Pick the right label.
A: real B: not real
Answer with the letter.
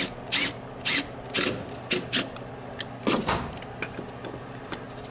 A